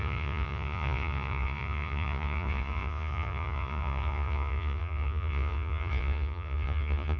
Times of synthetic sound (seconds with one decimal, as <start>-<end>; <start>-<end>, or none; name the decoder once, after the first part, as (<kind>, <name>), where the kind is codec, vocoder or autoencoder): 0.0-7.2 (vocoder, Vocos)